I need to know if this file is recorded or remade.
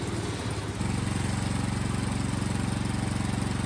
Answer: recorded